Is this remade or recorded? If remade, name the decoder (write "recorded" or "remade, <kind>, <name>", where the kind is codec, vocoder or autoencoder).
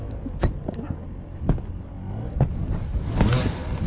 recorded